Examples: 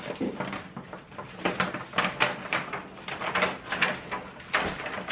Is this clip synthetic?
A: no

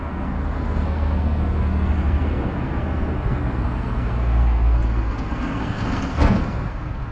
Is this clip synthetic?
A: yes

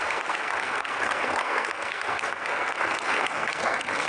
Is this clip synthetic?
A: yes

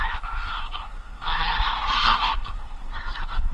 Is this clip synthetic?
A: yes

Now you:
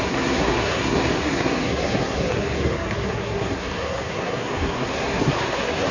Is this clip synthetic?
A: yes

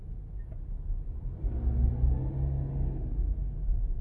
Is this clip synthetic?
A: no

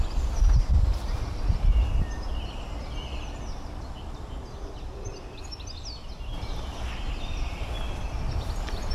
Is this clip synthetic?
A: no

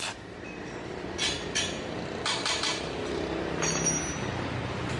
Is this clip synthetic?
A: no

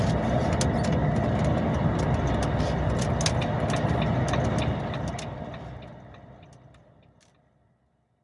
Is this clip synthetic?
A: no